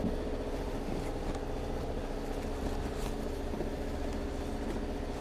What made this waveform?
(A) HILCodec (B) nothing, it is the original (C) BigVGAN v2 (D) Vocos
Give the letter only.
B